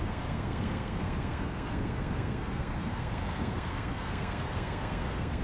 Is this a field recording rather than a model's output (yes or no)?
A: no